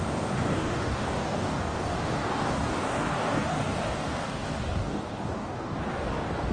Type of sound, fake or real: fake